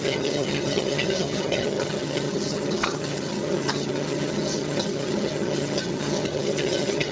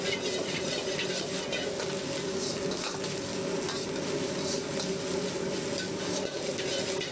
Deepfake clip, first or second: first